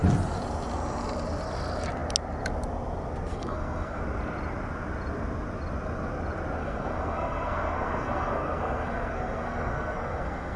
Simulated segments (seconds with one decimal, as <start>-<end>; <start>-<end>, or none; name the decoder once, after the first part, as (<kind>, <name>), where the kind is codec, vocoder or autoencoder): 3.3-4.0 (codec, SNAC); 6.6-10.6